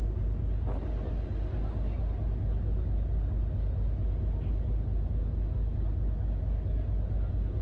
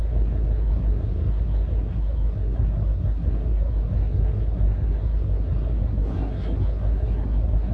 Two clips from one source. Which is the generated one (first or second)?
second